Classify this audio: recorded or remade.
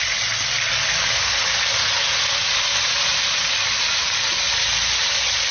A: recorded